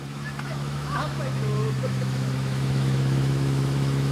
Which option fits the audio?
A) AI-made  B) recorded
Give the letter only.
A